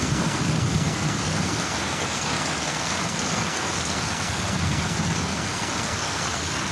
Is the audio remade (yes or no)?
yes